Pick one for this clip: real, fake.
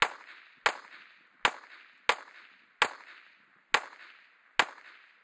real